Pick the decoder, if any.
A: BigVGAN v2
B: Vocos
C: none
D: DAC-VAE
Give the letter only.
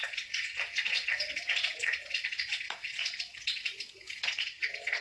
B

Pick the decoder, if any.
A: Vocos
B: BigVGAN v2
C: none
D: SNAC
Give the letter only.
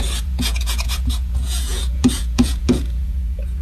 A